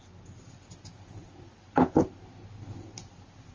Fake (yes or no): no